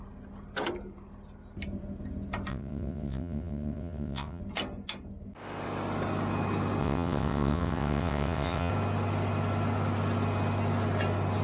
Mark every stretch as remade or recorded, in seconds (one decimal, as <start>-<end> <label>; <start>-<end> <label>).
0.0-2.5 recorded; 2.5-4.4 remade; 4.4-6.8 recorded; 6.8-8.7 remade; 8.7-11.4 recorded